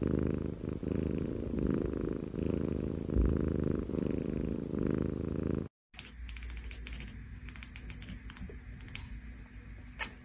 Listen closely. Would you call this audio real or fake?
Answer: real